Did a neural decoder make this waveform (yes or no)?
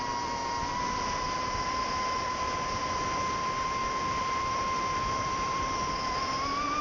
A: yes